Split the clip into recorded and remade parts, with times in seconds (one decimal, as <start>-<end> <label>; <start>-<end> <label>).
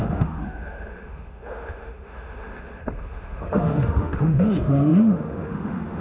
0.0-6.0 remade